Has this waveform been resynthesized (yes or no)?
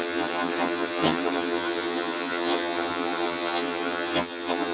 yes